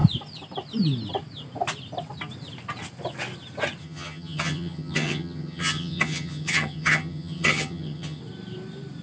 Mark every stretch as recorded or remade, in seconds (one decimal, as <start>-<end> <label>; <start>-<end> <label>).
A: 0.0-3.8 recorded; 3.8-8.2 remade; 8.2-9.0 recorded